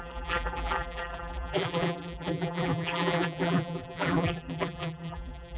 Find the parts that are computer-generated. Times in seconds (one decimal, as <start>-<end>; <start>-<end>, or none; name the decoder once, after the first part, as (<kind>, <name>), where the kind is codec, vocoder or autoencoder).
0.0-5.6 (vocoder, BigVGAN v2)